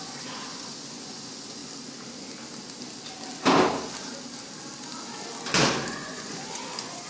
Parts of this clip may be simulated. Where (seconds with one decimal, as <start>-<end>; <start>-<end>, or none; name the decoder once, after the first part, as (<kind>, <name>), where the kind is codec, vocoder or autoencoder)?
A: 0.0-1.6 (vocoder, Vocos); 5.9-7.1